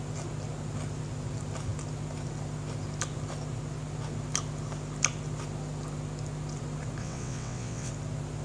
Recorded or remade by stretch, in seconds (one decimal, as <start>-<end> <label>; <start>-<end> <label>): 0.0-7.0 recorded; 7.0-7.9 remade; 7.9-8.4 recorded